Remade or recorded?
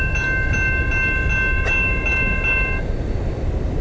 recorded